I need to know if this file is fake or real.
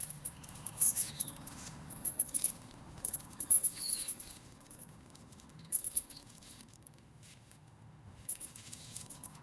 fake